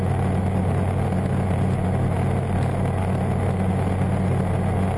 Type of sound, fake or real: real